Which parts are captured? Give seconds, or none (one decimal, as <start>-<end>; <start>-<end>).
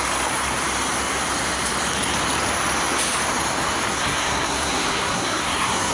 0.0-3.9